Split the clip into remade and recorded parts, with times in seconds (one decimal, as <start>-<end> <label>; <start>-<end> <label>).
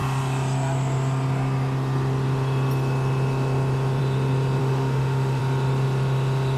0.0-4.6 recorded; 4.6-5.4 remade; 5.4-6.6 recorded